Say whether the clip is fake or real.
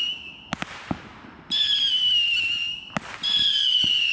real